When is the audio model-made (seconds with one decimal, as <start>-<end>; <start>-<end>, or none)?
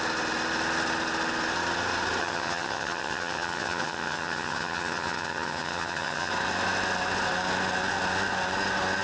2.2-6.3